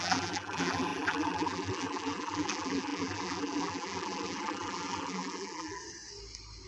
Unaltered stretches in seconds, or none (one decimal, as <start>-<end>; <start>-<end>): 5.8-6.7